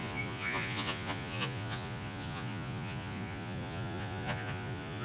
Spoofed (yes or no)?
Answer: yes